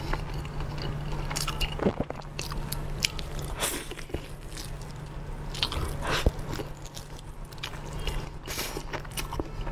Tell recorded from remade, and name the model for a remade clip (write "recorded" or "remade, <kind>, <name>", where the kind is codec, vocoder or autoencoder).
recorded